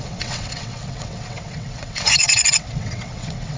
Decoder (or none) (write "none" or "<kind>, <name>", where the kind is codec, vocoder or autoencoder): vocoder, WaveNeXt